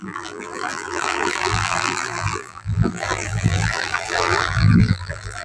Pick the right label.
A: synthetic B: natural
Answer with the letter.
A